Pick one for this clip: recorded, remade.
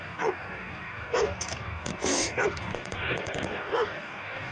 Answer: remade